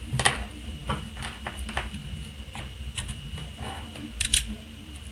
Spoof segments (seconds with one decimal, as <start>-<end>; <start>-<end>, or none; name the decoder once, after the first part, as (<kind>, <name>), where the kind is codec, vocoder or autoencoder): 0.0-2.0 (vocoder, BigVGAN v2); 2.6-5.1